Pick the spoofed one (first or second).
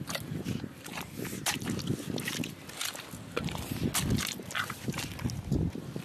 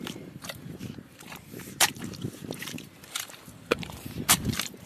second